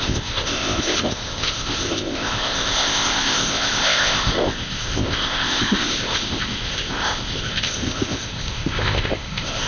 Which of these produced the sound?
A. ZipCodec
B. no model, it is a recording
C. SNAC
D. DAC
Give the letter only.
A